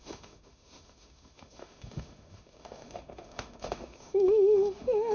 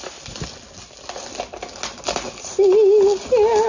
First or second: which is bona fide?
second